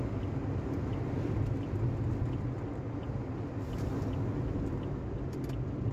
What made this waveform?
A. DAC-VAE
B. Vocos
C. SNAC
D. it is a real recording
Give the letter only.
D